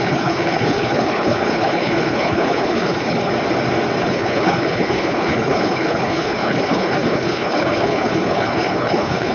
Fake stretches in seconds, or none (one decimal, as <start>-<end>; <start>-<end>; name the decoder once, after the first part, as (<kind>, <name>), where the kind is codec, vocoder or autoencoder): 0.0-3.3 (codec, HILCodec); 4.0-9.3